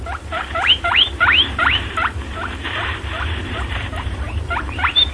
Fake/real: fake